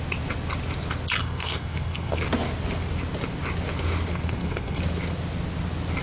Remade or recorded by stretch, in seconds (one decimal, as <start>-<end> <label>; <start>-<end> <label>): 0.0-1.2 recorded; 1.2-2.2 remade; 2.2-4.1 recorded; 4.1-4.8 remade; 4.8-6.0 recorded